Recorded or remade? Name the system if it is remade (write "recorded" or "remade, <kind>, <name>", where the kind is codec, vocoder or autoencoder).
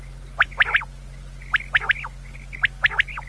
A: recorded